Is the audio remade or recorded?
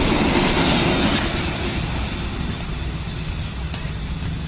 recorded